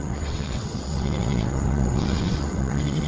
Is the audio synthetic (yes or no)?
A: yes